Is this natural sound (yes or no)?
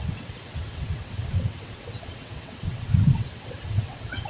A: no